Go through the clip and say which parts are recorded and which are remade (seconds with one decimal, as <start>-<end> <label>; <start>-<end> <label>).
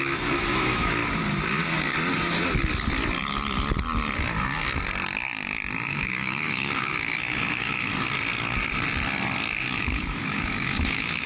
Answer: 0.0-1.0 remade; 1.0-6.0 recorded; 6.0-7.9 remade; 7.9-9.8 recorded; 9.8-11.3 remade